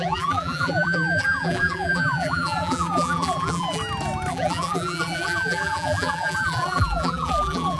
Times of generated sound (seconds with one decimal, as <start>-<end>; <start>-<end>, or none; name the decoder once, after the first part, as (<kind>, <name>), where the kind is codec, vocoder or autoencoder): 0.0-3.8 (vocoder, BigVGAN v2); 4.3-7.8